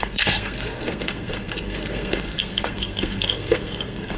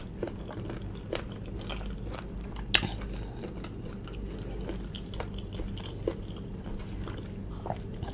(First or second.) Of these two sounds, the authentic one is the second